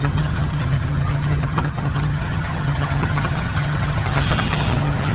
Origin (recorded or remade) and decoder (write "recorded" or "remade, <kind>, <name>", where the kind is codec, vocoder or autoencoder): remade, vocoder, HiFi-GAN